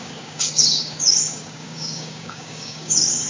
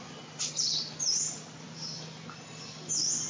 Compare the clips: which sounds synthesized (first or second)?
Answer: first